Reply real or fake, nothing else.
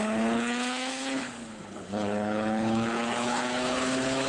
fake